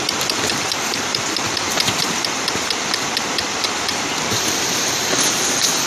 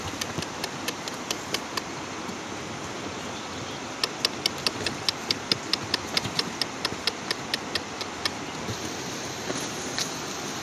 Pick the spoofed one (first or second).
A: first